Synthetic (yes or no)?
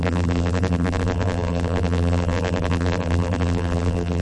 yes